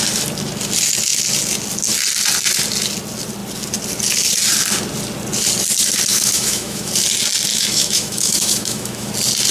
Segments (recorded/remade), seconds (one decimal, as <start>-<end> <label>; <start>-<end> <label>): 0.0-6.1 recorded; 6.1-6.9 remade; 6.9-7.5 recorded; 7.5-9.1 remade; 9.1-9.5 recorded